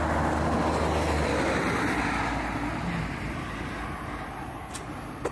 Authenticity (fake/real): real